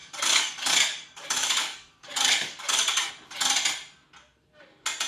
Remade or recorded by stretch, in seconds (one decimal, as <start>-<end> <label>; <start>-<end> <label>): 0.0-3.1 remade; 3.1-5.1 recorded